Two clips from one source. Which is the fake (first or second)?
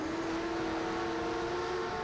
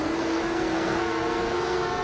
second